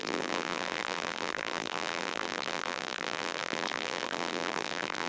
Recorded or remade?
remade